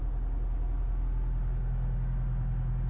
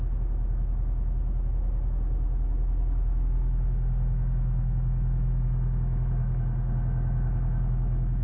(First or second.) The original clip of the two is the first